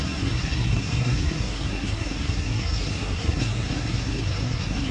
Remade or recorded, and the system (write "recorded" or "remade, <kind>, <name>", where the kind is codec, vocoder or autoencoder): remade, codec, SNAC